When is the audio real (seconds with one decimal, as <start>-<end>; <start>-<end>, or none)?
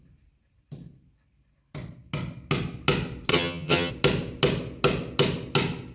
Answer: 0.0-3.3; 3.9-5.9